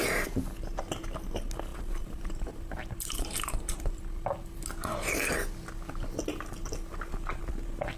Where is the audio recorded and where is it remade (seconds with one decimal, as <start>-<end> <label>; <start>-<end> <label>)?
0.0-1.7 recorded; 1.7-4.0 remade; 4.0-8.0 recorded